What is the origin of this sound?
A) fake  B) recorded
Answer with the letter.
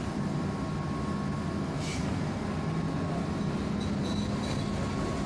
B